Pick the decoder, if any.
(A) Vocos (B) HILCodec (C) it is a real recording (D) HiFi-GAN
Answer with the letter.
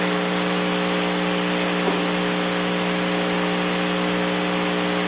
C